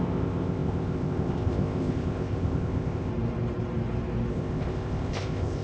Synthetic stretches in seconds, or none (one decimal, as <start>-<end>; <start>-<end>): 0.0-3.1; 4.3-5.6